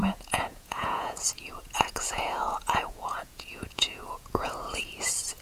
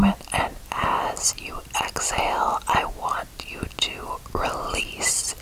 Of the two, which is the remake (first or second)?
first